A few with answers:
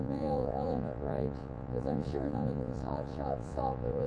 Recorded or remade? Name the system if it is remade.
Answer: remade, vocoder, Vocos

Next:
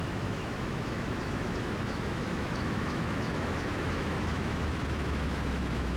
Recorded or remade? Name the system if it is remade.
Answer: remade, autoencoder, DAC-VAE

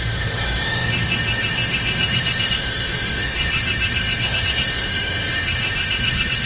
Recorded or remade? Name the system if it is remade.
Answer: remade, autoencoder, DAC-VAE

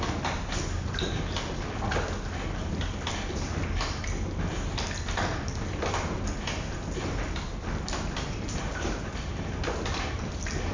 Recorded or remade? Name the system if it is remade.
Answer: recorded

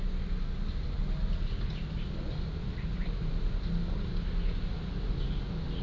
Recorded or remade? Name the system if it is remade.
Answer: recorded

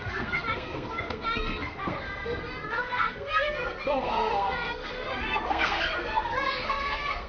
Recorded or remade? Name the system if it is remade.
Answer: remade, codec, SNAC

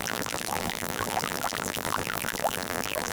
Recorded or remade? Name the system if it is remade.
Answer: remade, vocoder, BigVGAN v2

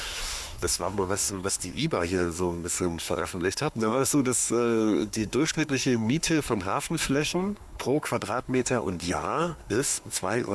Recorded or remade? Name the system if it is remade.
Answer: remade, codec, SNAC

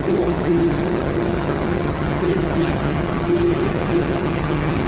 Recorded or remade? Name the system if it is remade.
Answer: remade, vocoder, HiFi-GAN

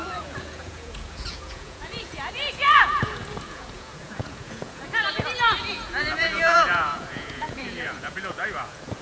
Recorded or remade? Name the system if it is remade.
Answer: remade, vocoder, Vocos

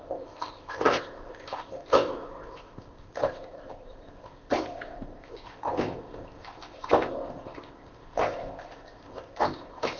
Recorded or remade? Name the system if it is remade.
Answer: remade, codec, ZipCodec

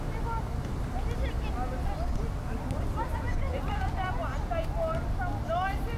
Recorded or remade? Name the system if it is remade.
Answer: recorded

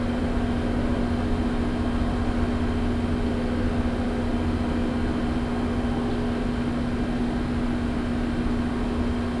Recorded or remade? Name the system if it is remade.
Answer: recorded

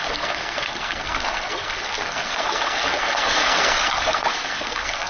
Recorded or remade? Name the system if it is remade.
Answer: remade, codec, SNAC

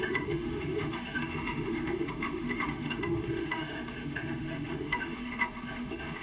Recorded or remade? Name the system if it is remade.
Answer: remade, autoencoder, DAC-VAE